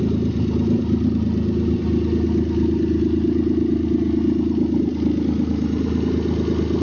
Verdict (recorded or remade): recorded